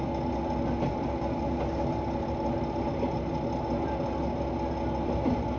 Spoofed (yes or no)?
no